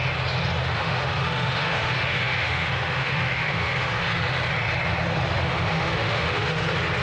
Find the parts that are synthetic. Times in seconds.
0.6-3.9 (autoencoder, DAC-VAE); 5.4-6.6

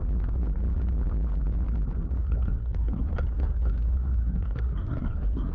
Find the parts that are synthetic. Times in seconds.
2.2-5.5 (codec, SNAC)

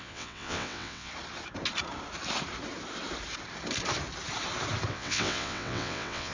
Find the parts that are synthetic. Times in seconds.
0.0-1.1 (vocoder, WaveNeXt); 4.9-6.3

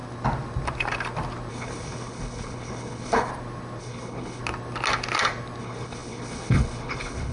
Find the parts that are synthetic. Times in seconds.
1.5-3.3 (codec, HILCodec); 3.8-4.4; 5.6-7.3

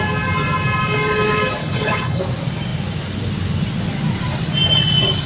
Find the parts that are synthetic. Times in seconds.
1.6-2.2 (codec, HILCodec)